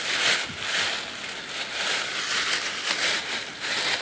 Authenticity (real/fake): real